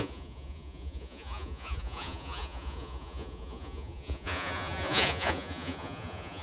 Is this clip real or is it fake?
fake